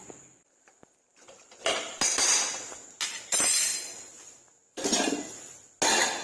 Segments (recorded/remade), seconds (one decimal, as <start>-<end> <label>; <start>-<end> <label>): 0.0-1.1 recorded; 1.1-2.0 remade; 2.0-6.2 recorded